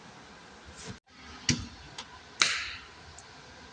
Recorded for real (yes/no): yes